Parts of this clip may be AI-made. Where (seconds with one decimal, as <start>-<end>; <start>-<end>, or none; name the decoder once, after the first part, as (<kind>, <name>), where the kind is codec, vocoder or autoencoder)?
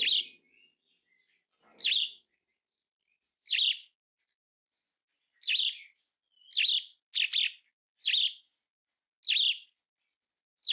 1.7-3.6 (vocoder, BigVGAN v2); 5.0-6.0